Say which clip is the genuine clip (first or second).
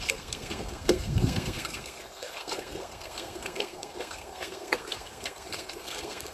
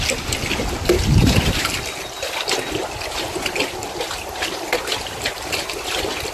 second